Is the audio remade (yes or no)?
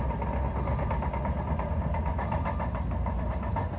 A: no